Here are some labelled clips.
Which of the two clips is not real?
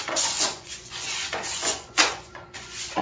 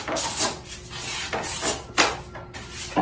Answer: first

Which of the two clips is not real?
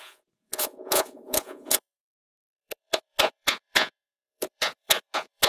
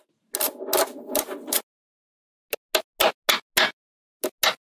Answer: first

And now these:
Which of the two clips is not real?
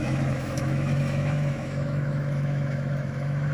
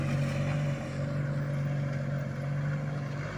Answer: first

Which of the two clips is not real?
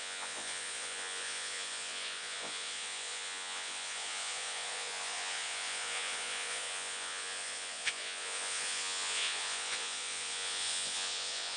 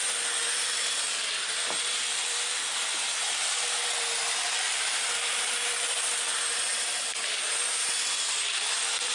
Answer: first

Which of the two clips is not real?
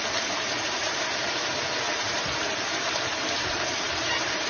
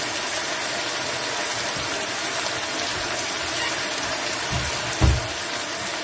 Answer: first